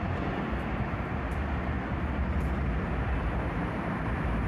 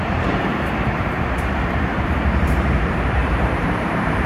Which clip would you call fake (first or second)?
second